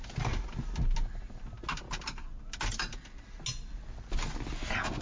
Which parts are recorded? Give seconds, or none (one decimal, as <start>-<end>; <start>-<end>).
0.0-5.0